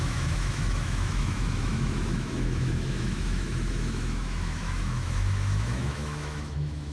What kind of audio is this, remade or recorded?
remade